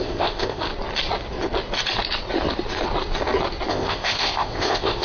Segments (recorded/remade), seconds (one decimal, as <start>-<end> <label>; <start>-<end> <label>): 0.0-0.7 remade; 0.7-3.7 recorded; 3.7-5.0 remade